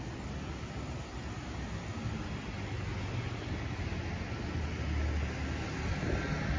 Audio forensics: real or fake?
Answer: real